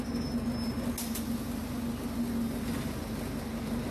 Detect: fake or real real